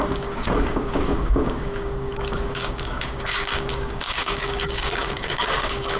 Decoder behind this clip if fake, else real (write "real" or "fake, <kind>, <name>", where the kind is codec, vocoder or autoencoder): fake, codec, DAC